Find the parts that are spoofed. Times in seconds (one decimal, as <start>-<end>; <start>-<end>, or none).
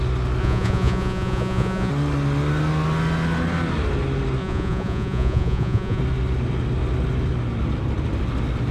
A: 0.4-1.9; 4.4-6.0